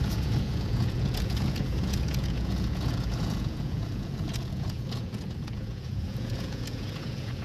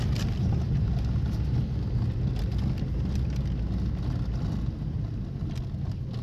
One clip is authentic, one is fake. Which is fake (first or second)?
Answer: first